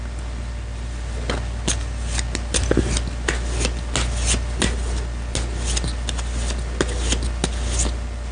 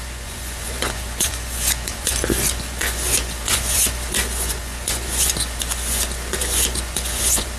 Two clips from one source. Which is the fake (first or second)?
second